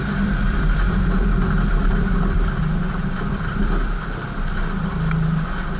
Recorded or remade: remade